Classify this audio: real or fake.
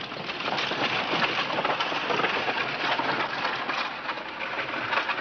real